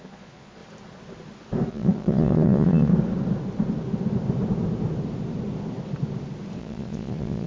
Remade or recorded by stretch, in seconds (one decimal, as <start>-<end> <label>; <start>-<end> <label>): 0.0-0.6 remade; 0.6-1.7 recorded; 1.7-2.9 remade; 2.9-6.6 recorded; 6.6-7.5 remade